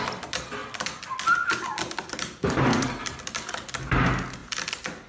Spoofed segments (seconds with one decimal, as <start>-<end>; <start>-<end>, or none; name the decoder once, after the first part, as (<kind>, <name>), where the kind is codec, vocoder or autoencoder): none